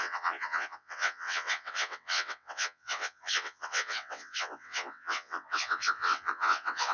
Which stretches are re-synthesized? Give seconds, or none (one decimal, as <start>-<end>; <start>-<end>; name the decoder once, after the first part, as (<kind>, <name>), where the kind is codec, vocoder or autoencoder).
0.0-6.9 (vocoder, WaveNeXt)